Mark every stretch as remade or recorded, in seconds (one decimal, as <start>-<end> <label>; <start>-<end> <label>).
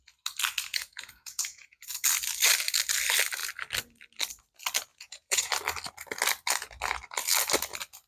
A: 0.0-0.7 recorded; 0.7-1.8 remade; 1.8-4.9 recorded; 4.9-5.5 remade; 5.5-8.1 recorded